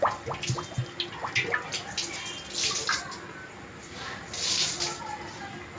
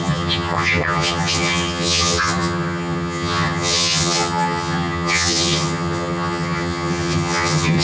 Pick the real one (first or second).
first